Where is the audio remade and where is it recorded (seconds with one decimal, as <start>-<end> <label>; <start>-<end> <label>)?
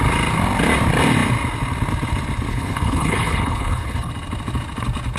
0.0-2.5 recorded; 2.5-4.1 remade; 4.1-5.2 recorded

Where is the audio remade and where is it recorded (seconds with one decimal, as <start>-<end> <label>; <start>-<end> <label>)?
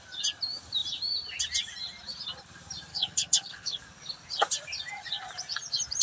0.0-2.9 recorded; 2.9-3.8 remade; 3.8-6.0 recorded